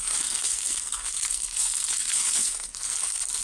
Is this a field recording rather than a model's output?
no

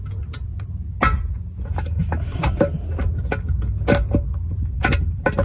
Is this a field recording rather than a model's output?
yes